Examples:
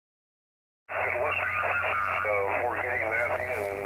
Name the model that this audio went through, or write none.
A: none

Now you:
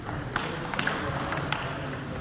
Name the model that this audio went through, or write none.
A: none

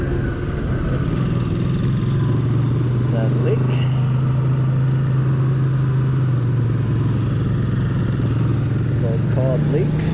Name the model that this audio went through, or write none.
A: none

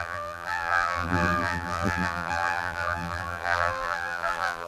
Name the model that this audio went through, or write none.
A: vocoder, BigVGAN v2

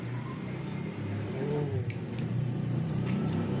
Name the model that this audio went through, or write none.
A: vocoder, BigVGAN v2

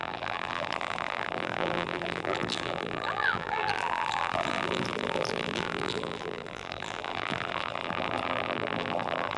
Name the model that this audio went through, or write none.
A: vocoder, BigVGAN v2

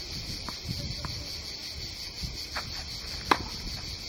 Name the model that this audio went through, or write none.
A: none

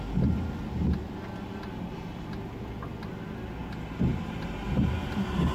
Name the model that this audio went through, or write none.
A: none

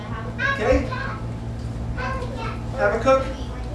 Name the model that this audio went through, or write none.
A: none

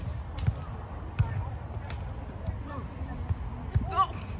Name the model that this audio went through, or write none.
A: none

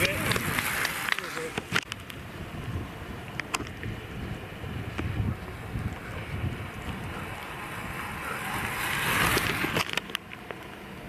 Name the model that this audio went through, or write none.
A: none